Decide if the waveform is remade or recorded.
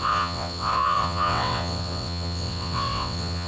remade